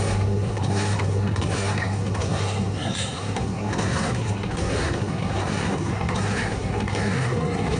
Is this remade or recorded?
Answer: remade